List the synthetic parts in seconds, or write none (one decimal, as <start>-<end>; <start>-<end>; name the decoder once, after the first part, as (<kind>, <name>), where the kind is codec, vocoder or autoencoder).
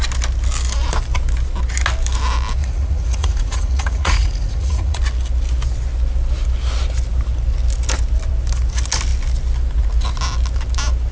2.6-5.0 (vocoder, Vocos)